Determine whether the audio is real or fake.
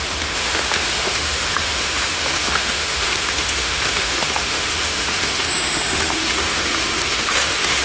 fake